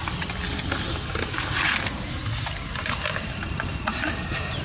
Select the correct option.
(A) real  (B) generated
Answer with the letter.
A